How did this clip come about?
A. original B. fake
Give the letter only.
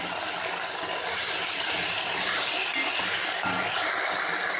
A